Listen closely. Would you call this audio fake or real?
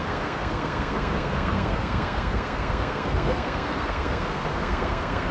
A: fake